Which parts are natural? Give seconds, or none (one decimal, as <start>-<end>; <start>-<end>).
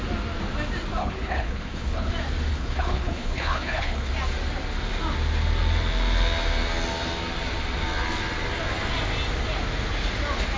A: 0.0-1.0; 2.1-2.5; 4.1-10.6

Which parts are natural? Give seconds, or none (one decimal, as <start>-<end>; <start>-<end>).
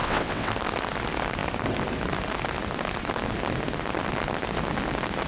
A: 0.5-5.3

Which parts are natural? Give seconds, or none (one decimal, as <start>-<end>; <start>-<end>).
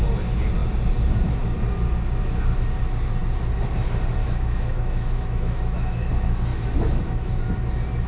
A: 0.0-4.2; 6.1-6.5; 7.4-8.1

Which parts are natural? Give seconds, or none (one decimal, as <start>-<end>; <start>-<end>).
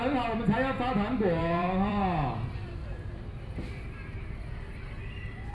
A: 0.0-1.4; 4.7-5.5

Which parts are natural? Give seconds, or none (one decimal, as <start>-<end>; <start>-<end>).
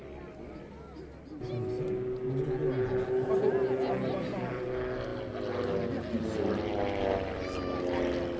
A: 0.0-8.4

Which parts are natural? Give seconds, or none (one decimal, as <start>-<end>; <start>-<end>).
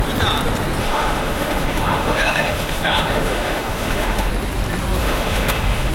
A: 0.0-0.8; 4.3-5.0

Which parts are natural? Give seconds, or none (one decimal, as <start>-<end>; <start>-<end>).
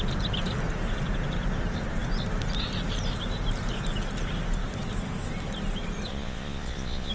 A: 0.0-6.1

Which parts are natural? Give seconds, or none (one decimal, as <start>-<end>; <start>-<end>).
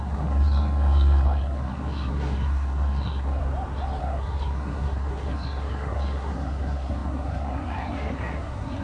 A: 3.4-4.0